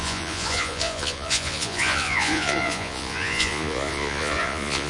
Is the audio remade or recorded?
remade